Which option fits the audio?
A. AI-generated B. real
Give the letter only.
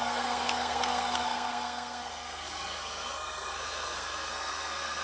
A